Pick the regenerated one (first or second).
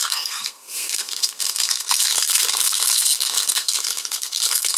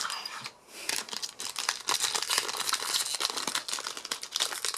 first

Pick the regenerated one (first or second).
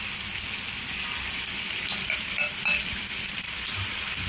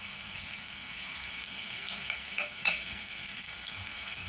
second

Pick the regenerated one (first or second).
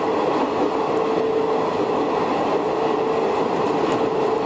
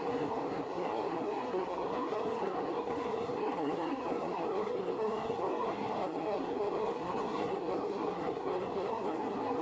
second